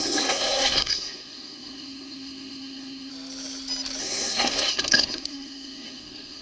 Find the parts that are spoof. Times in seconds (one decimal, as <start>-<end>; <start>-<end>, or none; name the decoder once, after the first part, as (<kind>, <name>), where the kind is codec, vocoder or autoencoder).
0.0-3.1 (codec, SNAC); 4.0-6.4

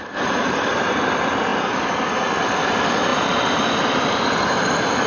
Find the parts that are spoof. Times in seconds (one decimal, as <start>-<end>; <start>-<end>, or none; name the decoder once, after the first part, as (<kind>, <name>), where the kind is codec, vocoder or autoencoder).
none